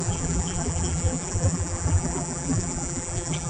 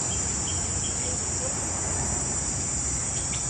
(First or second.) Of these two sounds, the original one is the second